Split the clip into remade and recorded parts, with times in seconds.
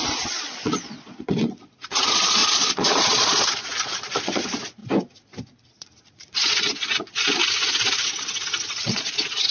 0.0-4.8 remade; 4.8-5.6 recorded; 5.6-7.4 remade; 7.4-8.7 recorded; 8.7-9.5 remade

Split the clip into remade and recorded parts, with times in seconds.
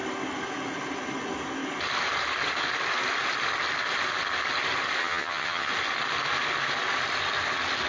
0.0-5.0 recorded; 5.0-5.7 remade; 5.7-7.9 recorded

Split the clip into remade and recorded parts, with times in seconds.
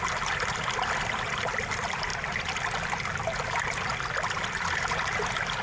0.0-5.6 recorded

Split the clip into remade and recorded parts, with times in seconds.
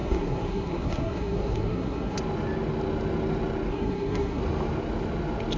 0.0-2.2 remade; 2.2-3.7 recorded; 3.7-4.4 remade; 4.4-5.6 recorded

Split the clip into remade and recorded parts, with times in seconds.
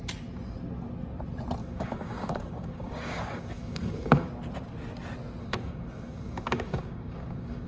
0.0-1.6 recorded; 1.6-4.3 remade; 4.3-5.4 recorded; 5.4-7.7 remade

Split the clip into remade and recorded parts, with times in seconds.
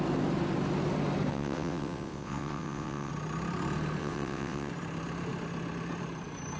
0.0-1.3 recorded; 1.3-3.1 remade; 3.1-4.0 recorded; 4.0-4.7 remade; 4.7-6.6 recorded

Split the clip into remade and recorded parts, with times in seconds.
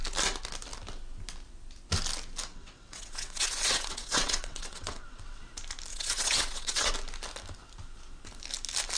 0.0-2.5 recorded; 2.5-5.4 remade; 5.4-5.9 recorded; 5.9-6.9 remade; 6.9-9.0 recorded